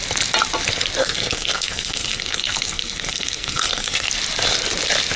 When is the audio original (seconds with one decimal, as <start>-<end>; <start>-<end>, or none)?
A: 0.0-1.0; 4.1-5.2